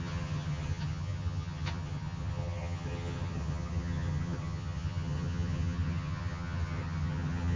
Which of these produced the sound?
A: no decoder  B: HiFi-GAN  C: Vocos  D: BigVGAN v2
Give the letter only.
B